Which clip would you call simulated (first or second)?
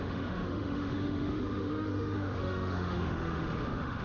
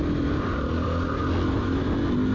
first